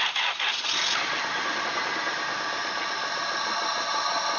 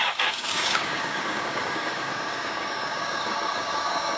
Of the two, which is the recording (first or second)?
first